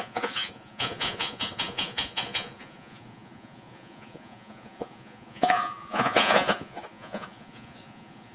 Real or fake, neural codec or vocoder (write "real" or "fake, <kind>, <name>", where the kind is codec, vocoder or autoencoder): fake, vocoder, Vocos